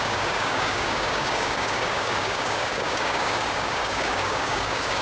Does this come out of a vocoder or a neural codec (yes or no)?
yes